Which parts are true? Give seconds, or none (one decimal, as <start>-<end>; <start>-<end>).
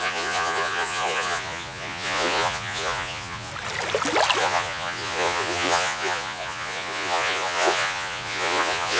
3.5-4.4